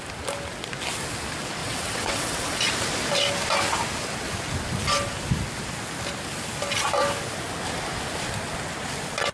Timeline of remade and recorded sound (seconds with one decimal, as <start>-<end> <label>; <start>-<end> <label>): 0.0-1.6 recorded; 1.6-2.6 remade; 2.6-9.3 recorded